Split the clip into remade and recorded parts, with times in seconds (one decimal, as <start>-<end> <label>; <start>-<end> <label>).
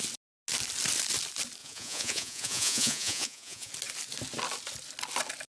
0.0-1.6 recorded; 1.6-3.7 remade; 3.7-5.6 recorded